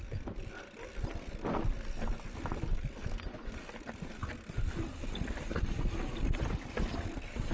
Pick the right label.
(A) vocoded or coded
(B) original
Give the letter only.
B